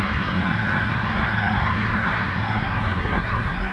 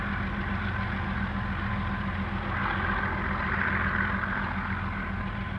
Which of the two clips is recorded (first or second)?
second